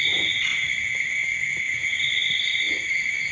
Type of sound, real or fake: real